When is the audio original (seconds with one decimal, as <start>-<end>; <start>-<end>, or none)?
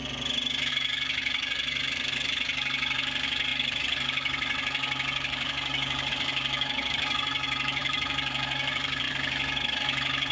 0.0-0.7